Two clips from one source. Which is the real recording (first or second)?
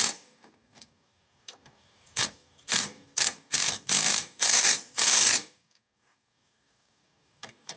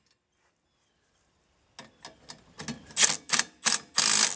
second